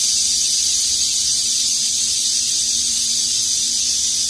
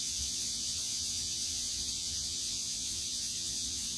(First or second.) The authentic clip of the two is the first